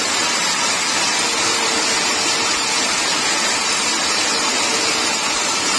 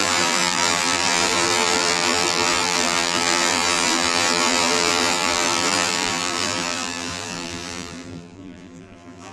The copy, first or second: second